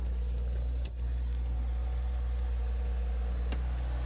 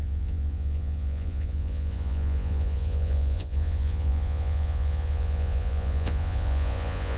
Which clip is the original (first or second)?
first